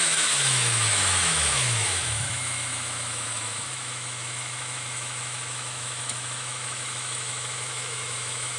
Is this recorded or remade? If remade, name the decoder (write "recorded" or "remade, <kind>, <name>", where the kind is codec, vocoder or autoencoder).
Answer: remade, autoencoder, DAC-VAE